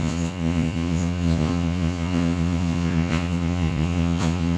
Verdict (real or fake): fake